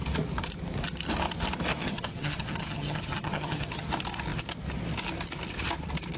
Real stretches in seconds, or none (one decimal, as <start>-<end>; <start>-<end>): 0.0-1.7; 3.9-6.2